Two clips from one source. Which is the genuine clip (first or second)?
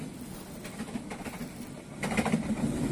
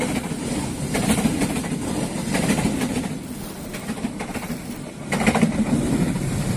first